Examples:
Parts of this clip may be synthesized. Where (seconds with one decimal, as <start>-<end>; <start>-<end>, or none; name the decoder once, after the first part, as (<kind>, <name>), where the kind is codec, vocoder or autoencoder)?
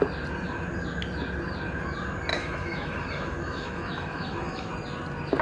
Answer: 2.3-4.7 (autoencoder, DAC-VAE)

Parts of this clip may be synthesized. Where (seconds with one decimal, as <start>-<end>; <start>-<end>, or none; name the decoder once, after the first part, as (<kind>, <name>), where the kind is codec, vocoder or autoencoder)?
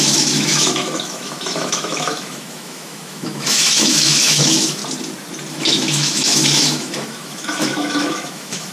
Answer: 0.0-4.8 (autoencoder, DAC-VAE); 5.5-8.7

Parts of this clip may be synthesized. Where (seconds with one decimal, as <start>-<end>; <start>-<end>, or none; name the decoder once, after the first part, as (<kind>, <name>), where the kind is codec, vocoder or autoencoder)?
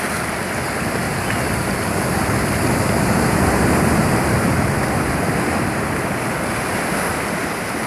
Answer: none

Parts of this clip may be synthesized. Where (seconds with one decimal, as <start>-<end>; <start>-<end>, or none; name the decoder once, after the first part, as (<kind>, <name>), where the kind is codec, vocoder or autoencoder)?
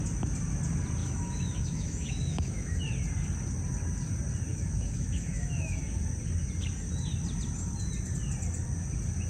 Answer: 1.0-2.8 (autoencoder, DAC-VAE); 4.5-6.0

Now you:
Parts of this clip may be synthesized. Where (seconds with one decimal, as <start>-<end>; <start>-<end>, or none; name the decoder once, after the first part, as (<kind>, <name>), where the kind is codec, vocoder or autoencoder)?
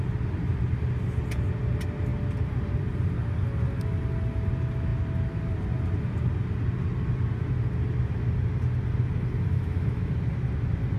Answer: 9.5-10.1 (autoencoder, DAC-VAE)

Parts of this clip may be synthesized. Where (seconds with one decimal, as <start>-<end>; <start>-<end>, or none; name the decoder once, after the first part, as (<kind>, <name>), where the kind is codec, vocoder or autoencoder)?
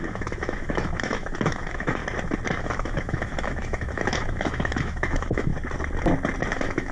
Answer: 0.0-2.0 (autoencoder, DAC-VAE); 2.6-5.5; 6.5-6.9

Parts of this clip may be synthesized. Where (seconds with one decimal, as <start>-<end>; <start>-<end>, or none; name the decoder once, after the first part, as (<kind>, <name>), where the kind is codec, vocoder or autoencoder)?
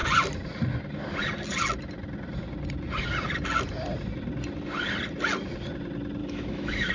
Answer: 6.2-6.9 (autoencoder, DAC-VAE)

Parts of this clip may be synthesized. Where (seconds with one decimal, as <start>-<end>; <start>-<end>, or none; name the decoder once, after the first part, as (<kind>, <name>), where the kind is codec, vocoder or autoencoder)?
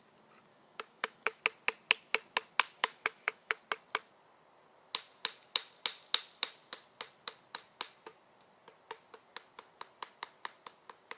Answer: 0.5-1.4 (autoencoder, DAC-VAE); 2.8-3.6